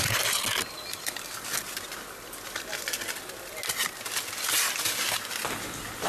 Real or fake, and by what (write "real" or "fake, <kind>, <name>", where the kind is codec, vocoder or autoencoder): real